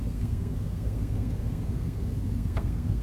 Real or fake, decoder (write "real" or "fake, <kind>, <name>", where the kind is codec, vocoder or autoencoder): fake, codec, SNAC